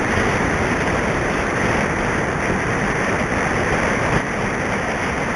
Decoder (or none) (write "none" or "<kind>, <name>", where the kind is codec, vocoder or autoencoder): vocoder, BigVGAN v2